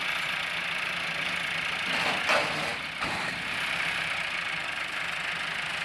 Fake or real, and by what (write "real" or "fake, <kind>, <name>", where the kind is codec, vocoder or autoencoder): real